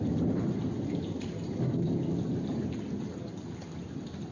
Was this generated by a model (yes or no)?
no